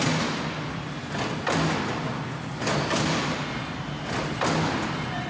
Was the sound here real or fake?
real